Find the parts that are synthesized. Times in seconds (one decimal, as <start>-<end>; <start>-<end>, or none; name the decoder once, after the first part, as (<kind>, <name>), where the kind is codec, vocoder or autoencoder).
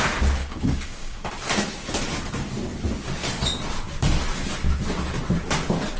0.4-1.3 (codec, DAC)